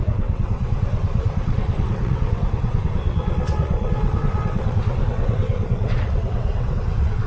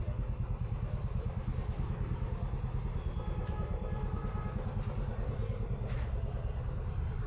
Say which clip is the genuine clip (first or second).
second